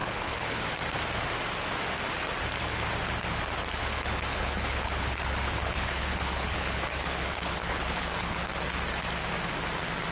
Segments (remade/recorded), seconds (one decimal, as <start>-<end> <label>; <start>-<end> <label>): 0.0-0.6 remade; 0.6-3.8 recorded; 3.8-8.5 remade; 8.5-10.1 recorded

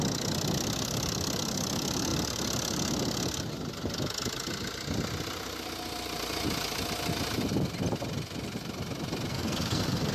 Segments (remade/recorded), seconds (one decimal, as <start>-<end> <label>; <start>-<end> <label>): 0.0-9.3 recorded; 9.3-10.1 remade

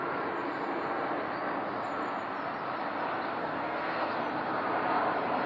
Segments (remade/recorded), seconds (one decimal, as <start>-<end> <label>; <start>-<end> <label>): 0.0-3.4 recorded; 3.4-4.2 remade; 4.2-5.5 recorded

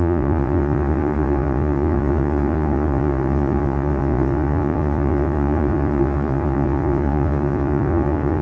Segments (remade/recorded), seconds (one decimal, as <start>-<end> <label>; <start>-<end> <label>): 0.0-8.4 remade